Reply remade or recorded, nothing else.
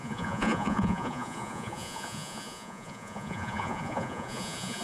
remade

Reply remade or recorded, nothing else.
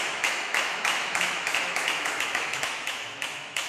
remade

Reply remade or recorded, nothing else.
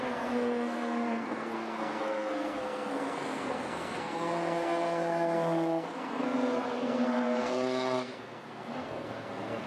remade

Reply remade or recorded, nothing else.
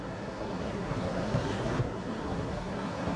remade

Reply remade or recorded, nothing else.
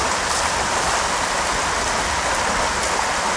recorded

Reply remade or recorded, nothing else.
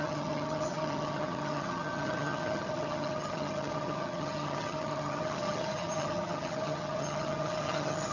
remade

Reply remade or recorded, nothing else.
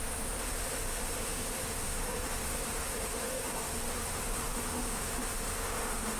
remade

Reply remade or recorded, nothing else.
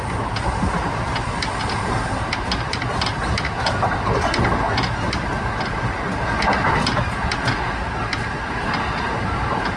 recorded